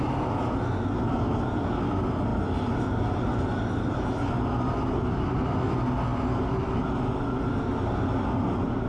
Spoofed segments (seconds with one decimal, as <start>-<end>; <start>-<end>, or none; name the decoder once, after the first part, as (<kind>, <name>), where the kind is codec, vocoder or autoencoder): none